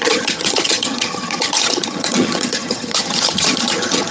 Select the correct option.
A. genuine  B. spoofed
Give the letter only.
B